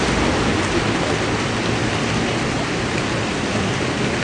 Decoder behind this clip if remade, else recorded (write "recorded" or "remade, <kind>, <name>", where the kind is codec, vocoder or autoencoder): recorded